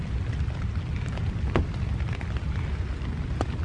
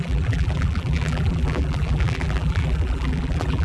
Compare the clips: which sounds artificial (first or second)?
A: second